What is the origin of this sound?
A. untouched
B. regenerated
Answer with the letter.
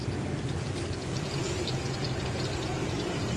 A